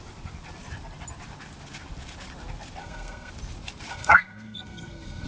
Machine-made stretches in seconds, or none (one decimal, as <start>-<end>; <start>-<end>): 2.8-3.3; 3.9-5.3